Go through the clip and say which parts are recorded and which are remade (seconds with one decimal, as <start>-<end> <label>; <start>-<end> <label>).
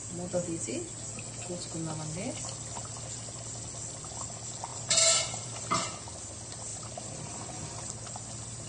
0.0-4.7 recorded; 4.7-5.6 remade; 5.6-6.7 recorded; 6.7-7.5 remade; 7.5-8.7 recorded